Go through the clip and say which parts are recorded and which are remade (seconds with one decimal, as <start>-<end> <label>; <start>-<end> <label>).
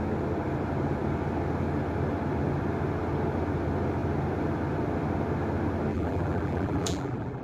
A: 0.0-5.9 recorded; 5.9-7.4 remade